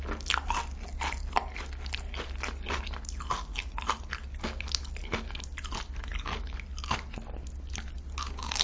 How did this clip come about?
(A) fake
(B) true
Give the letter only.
B